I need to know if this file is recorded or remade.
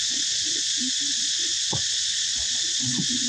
remade